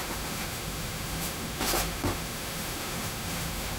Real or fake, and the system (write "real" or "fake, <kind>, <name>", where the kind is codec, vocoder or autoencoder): fake, autoencoder, DAC-VAE